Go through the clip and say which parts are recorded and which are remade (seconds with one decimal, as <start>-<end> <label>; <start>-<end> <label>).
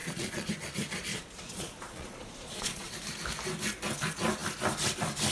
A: 0.0-0.5 remade; 0.5-1.1 recorded; 1.1-2.9 remade; 2.9-5.3 recorded